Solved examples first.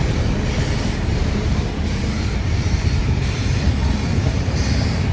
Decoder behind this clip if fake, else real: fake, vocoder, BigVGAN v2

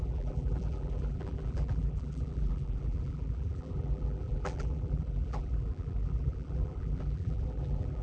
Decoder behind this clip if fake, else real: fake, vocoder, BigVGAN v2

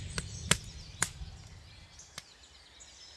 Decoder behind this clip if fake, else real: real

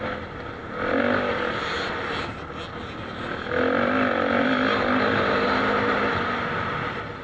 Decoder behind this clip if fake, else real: real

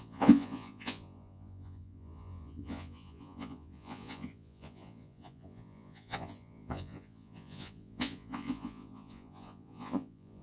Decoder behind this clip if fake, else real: fake, vocoder, Vocos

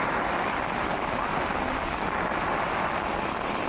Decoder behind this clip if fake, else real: real